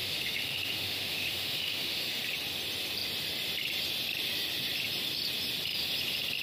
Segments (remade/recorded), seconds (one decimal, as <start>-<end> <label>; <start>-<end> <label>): 0.0-2.2 remade; 2.2-6.4 recorded

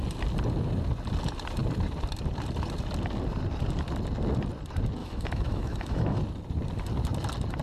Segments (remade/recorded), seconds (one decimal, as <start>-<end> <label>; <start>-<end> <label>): 0.0-5.0 recorded; 5.0-6.2 remade; 6.2-7.6 recorded

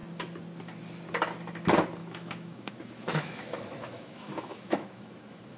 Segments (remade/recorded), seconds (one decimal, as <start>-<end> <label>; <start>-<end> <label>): 0.0-2.0 recorded; 2.0-5.6 remade

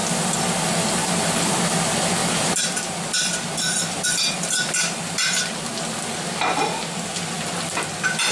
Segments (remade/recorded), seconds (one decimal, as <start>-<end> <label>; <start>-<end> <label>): 0.0-8.3 recorded

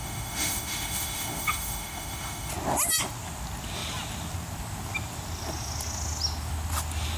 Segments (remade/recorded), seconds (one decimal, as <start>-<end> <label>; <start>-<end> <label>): 0.0-2.5 remade; 2.5-7.2 recorded

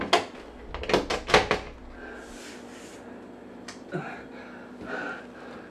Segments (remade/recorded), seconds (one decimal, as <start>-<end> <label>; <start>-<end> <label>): 0.0-5.7 recorded

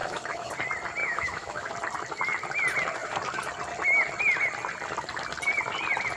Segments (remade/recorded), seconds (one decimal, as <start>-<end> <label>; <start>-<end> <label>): 0.0-0.5 remade; 0.5-1.0 recorded; 1.0-1.7 remade; 1.7-6.2 recorded